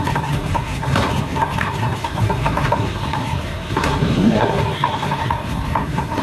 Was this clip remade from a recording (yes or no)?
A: yes